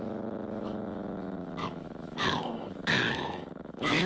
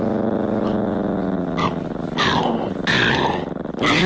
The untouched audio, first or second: second